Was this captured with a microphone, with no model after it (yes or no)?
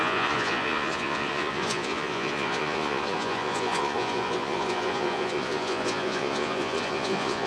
no